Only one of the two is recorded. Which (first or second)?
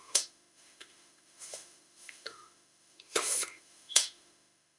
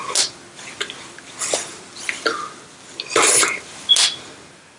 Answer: second